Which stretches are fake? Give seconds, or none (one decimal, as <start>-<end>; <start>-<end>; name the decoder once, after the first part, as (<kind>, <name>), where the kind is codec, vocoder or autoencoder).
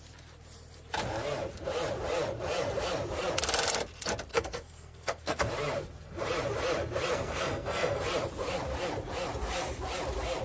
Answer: 4.3-5.5 (codec, SNAC); 7.1-8.0